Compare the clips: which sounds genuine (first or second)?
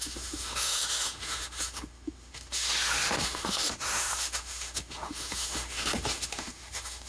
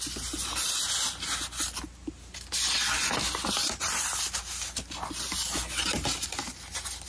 second